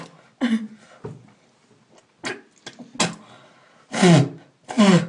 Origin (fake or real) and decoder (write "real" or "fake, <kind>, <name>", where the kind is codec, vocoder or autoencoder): real